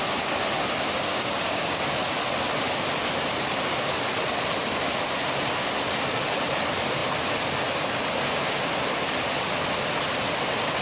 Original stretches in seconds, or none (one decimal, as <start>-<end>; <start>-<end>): 0.0-1.1; 1.8-10.8